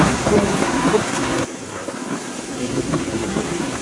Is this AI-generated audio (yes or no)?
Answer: yes